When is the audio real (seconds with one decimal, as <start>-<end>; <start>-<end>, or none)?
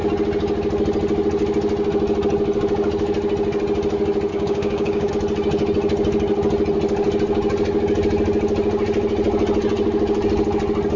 0.0-4.3; 5.1-11.0